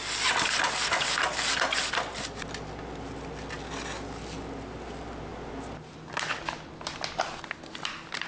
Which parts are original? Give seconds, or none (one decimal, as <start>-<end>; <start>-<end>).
0.0-8.3

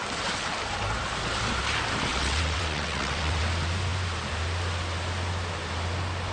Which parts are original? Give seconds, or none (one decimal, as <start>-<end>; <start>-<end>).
0.0-2.1; 3.4-6.3

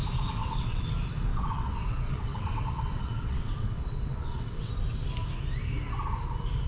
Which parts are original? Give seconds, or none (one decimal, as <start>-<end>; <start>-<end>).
0.0-0.4; 0.9-1.3; 4.7-6.7

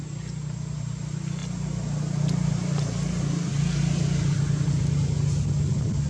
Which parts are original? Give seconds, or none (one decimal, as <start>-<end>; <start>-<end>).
0.0-6.1

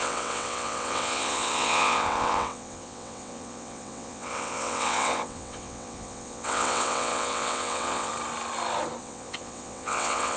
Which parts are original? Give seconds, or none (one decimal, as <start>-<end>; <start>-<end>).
8.1-9.0